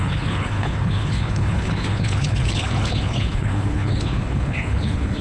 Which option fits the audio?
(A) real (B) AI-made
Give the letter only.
B